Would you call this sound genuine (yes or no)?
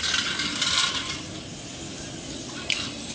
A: yes